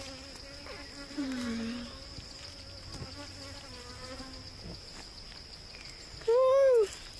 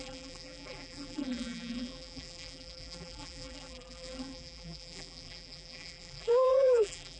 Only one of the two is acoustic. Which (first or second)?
first